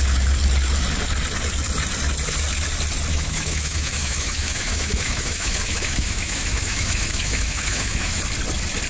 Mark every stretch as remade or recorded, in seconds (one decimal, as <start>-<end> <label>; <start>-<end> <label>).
0.0-3.1 recorded; 3.1-8.2 remade; 8.2-8.9 recorded